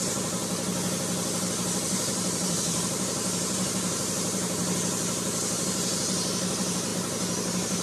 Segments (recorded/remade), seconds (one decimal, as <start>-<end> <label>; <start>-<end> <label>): 0.0-0.4 remade; 0.4-1.6 recorded; 1.6-4.6 remade; 4.6-5.6 recorded; 5.6-6.9 remade; 6.9-7.8 recorded